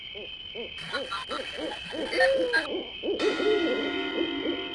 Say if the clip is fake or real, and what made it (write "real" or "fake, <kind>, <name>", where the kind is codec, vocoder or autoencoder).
real